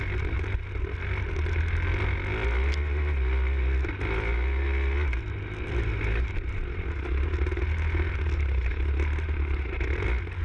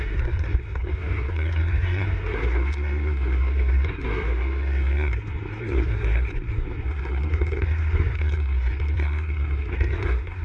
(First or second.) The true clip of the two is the first